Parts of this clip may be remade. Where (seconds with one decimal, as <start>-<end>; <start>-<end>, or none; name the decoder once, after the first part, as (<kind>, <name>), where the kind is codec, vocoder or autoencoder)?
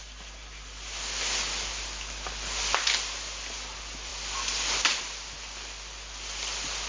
none